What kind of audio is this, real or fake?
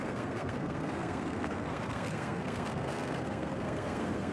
fake